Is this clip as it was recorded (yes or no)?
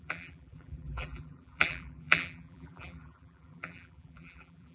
no